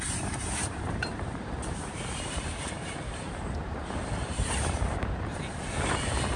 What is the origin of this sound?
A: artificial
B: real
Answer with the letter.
A